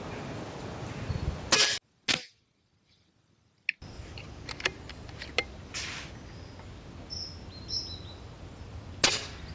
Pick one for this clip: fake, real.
real